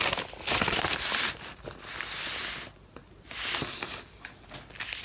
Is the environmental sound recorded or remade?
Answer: recorded